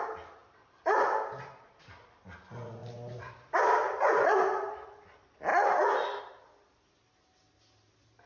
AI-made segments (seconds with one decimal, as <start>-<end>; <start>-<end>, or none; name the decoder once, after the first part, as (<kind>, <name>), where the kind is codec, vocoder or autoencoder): none